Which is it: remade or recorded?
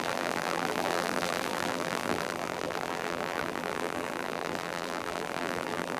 remade